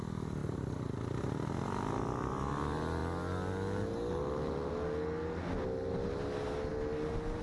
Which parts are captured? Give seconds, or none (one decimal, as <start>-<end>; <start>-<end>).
0.0-7.4